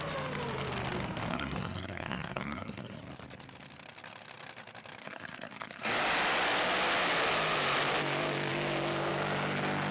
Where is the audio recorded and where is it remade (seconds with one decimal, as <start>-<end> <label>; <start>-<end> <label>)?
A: 0.0-1.3 recorded; 1.3-3.0 remade; 3.0-5.0 recorded; 5.0-5.9 remade; 5.9-9.9 recorded